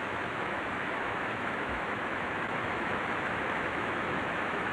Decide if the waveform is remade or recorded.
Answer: remade